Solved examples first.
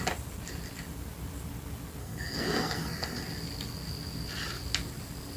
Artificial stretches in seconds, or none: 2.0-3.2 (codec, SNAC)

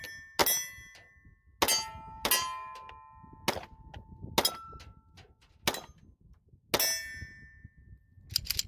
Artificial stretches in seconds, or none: none

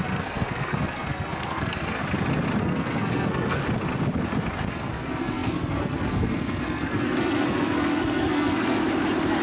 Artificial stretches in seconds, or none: 0.0-2.0 (codec, SNAC); 2.6-3.6; 4.7-8.8